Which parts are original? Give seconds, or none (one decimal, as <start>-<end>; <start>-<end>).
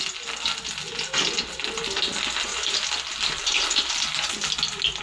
0.0-2.5; 3.1-5.0